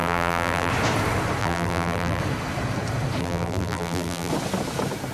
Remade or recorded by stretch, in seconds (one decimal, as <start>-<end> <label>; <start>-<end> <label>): 0.0-0.7 remade; 0.7-1.4 recorded; 1.4-2.2 remade; 2.2-3.2 recorded; 3.2-4.3 remade; 4.3-5.1 recorded